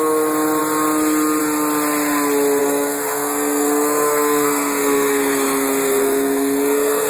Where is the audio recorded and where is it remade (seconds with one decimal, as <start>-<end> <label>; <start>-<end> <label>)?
0.0-2.6 recorded; 2.6-7.1 remade